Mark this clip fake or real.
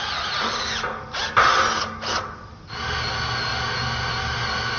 real